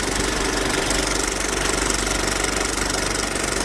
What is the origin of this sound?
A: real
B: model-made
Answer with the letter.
A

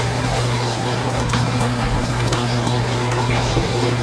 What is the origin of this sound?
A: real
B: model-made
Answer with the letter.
B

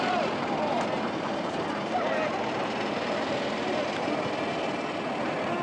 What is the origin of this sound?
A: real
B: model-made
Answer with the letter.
A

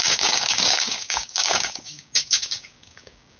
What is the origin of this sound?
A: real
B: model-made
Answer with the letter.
B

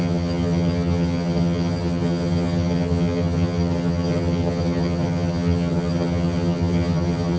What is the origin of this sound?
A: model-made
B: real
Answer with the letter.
A